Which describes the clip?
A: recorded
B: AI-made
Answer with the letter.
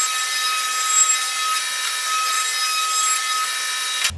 A